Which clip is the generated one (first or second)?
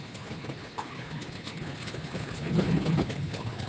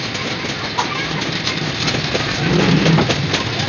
first